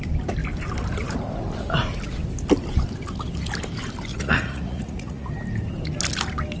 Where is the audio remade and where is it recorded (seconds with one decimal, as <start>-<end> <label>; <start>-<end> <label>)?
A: 0.0-4.1 recorded; 4.1-5.3 remade; 5.3-6.6 recorded